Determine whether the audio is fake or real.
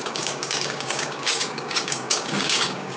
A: fake